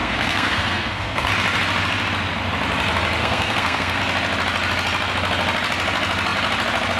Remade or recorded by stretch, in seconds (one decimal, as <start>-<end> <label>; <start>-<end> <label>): 0.0-1.3 remade; 1.3-3.2 recorded; 3.2-4.0 remade; 4.0-7.0 recorded